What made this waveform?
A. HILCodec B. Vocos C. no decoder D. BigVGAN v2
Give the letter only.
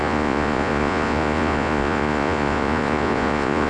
B